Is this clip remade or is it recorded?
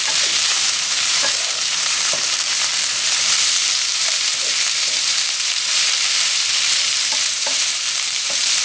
remade